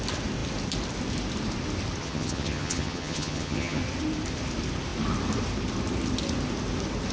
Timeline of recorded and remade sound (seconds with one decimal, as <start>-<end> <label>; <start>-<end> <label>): 0.0-2.0 recorded; 2.0-3.8 remade; 3.8-7.1 recorded